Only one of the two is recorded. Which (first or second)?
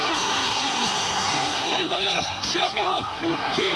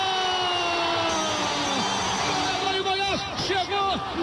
second